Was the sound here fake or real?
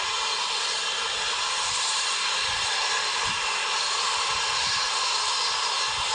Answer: real